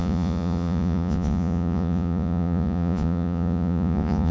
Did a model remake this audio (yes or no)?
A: yes